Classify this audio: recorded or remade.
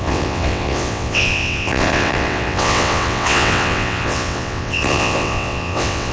remade